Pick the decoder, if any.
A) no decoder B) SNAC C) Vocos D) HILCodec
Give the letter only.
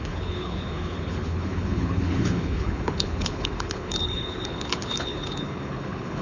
D